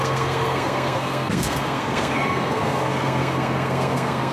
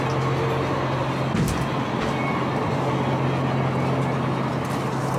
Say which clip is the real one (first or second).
second